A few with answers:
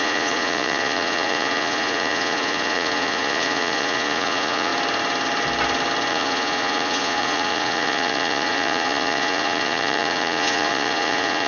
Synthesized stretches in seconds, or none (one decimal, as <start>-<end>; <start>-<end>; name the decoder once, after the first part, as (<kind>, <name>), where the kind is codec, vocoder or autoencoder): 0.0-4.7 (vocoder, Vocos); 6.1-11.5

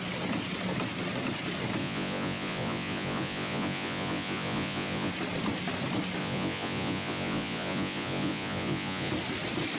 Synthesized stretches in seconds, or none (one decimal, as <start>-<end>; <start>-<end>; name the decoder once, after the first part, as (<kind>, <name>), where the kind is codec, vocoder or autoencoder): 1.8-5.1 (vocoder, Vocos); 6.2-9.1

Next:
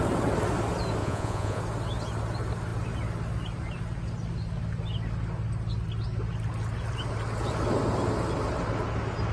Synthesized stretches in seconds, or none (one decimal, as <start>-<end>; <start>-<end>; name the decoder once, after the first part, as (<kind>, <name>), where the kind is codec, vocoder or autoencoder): 1.0-1.6 (vocoder, Vocos)

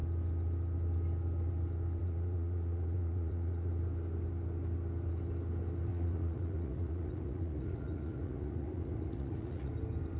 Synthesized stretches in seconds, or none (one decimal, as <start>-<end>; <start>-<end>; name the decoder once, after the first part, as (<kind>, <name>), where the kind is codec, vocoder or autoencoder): 2.0-3.7 (vocoder, Vocos); 5.9-9.7